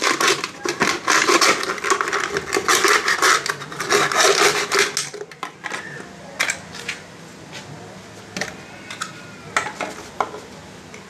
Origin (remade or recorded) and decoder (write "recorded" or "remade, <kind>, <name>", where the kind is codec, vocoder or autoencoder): recorded